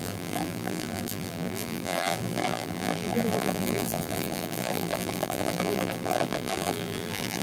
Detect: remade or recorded remade